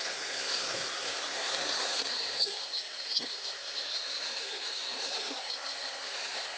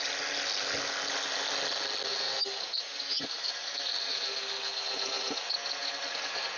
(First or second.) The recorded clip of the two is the second